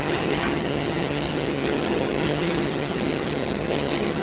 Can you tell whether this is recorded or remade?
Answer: remade